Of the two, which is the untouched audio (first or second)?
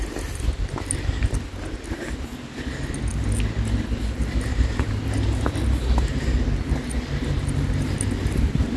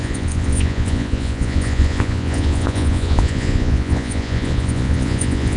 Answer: first